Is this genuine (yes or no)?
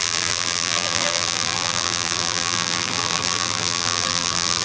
no